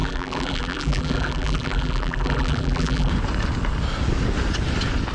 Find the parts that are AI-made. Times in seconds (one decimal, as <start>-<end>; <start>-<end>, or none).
0.0-3.1